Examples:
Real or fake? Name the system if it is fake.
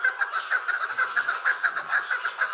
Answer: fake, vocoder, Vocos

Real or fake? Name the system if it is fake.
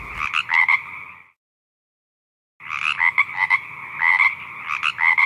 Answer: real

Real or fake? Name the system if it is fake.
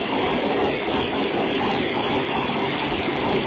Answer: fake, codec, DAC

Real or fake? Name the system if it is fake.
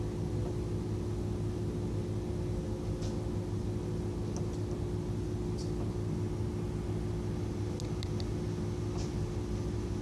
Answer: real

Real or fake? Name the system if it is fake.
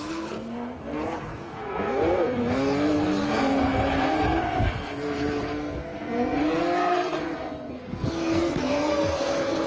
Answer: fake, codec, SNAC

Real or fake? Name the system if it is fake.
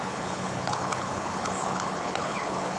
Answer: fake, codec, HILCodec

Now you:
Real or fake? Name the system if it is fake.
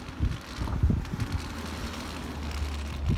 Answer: real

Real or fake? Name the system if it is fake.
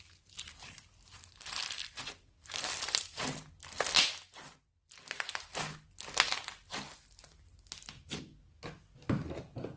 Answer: real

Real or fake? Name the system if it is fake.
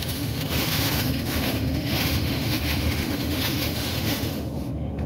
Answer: fake, autoencoder, DAC-VAE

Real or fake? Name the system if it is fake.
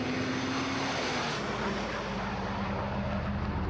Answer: real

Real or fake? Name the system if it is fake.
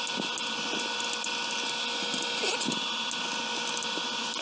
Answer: real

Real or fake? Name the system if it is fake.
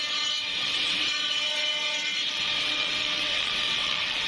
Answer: fake, vocoder, WaveNeXt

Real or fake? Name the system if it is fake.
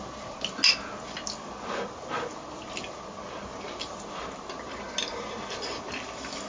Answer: real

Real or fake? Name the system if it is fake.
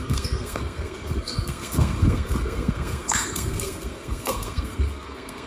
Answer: fake, codec, SNAC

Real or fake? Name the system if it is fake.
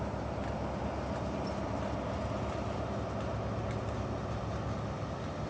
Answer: real